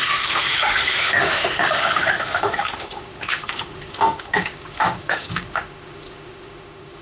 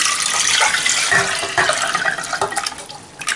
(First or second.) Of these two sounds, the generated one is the first